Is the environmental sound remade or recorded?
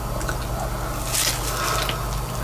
recorded